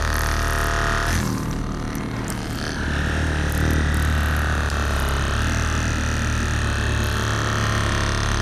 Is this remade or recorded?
recorded